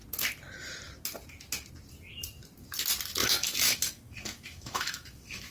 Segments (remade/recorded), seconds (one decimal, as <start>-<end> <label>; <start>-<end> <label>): 0.0-3.2 recorded; 3.2-5.5 remade